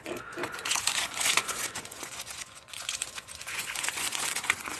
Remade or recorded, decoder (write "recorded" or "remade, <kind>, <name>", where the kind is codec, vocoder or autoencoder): remade, vocoder, Vocos